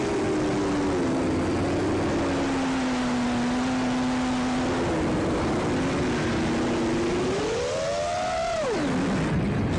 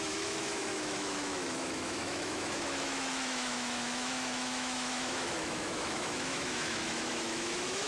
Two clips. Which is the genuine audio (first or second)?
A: first